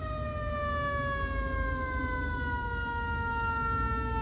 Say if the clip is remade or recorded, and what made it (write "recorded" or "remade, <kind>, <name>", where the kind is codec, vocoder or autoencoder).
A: recorded